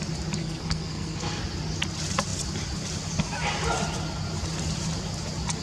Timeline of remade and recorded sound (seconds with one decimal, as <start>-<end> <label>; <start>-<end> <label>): 0.0-0.4 recorded; 0.4-1.4 remade; 1.4-5.6 recorded